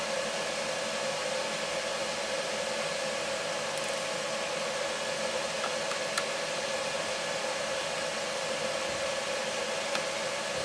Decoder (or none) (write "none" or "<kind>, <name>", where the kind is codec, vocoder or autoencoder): none